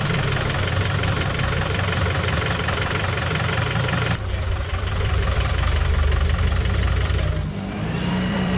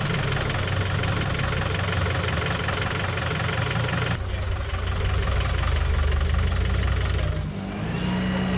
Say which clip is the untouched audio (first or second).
second